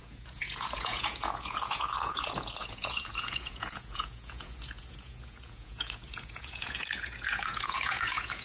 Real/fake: fake